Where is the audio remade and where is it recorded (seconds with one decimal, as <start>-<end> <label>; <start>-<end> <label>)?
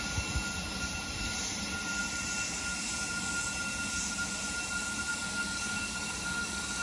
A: 0.0-5.1 recorded; 5.1-6.8 remade